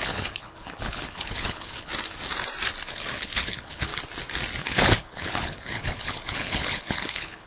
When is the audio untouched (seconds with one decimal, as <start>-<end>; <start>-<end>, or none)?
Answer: 1.9-2.9; 3.9-4.6